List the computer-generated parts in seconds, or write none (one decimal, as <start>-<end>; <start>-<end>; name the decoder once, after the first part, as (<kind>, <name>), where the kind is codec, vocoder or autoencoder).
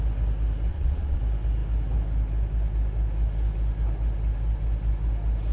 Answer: 0.7-1.2 (vocoder, Vocos)